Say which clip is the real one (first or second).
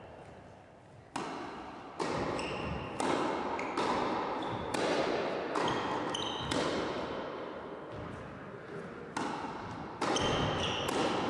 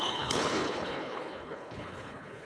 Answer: first